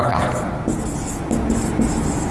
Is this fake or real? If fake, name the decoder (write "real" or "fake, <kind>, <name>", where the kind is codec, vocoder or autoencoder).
real